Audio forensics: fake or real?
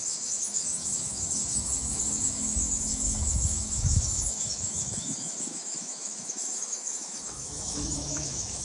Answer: fake